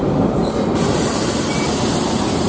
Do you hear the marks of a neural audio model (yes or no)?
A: yes